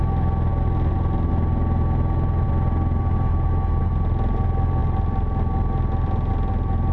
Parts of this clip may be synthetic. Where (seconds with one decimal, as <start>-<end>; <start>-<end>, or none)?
none